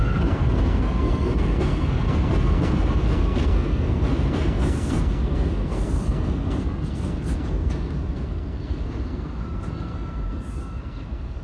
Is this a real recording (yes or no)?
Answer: no